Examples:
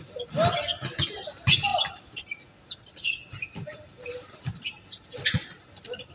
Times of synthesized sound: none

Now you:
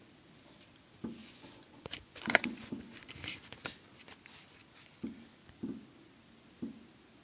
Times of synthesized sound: 1.2-3.1 (vocoder, Vocos)

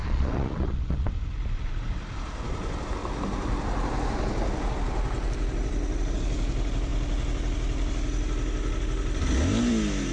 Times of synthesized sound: 0.0-1.1 (vocoder, Vocos)